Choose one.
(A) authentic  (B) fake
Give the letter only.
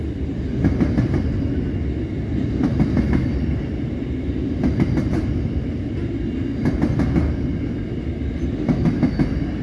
A